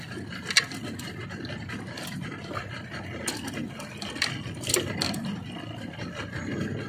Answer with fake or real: real